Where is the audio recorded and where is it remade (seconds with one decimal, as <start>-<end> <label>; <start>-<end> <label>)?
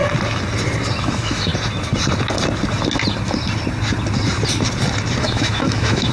0.0-0.9 recorded; 0.9-1.5 remade; 1.5-5.2 recorded; 5.2-6.1 remade